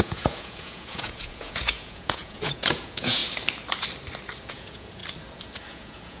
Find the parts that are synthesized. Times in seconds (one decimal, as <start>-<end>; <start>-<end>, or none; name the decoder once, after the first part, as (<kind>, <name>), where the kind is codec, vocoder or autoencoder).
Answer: 0.0-3.2 (vocoder, Vocos); 4.5-5.0; 5.7-6.2